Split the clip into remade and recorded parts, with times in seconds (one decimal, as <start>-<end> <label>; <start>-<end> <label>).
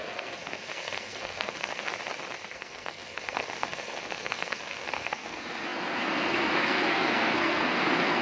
0.0-1.9 remade; 1.9-2.5 recorded; 2.5-8.2 remade